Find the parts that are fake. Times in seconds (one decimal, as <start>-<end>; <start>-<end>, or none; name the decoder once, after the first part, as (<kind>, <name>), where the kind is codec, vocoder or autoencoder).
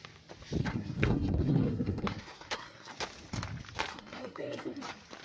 0.6-2.9 (codec, SNAC); 3.9-4.8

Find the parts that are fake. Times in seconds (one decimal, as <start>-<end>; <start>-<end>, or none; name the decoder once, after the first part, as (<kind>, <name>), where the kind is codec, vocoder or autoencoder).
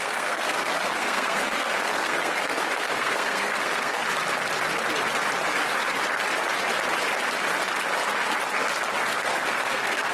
0.0-4.0 (codec, SNAC); 9.1-10.1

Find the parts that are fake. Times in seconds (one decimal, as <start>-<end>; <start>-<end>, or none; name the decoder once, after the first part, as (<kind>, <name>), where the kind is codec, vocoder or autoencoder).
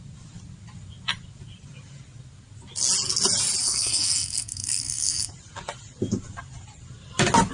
3.6-5.3 (codec, SNAC)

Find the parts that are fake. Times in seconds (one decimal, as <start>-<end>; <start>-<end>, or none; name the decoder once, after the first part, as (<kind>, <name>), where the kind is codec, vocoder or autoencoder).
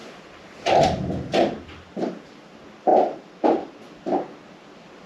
none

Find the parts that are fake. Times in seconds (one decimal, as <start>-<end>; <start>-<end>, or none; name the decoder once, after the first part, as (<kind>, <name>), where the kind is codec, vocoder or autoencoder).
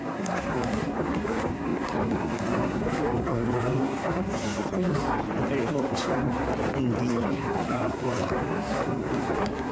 0.0-5.2 (codec, SNAC); 5.7-6.5; 7.1-9.7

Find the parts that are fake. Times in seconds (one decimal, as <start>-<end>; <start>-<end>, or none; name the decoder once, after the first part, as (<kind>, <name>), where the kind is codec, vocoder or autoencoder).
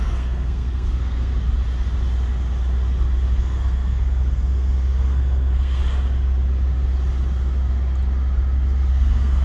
0.0-1.3 (codec, SNAC); 3.4-5.8; 8.9-9.4